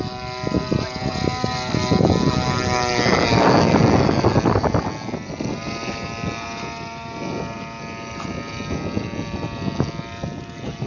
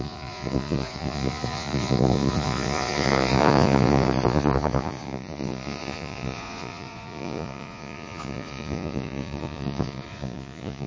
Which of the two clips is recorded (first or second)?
first